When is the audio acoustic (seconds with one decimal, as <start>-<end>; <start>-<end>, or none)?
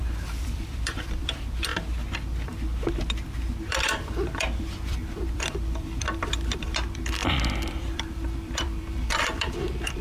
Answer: 1.7-3.6; 7.2-7.7